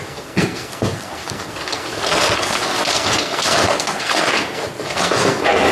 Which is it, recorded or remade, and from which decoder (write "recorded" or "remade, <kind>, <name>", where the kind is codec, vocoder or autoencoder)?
remade, codec, SNAC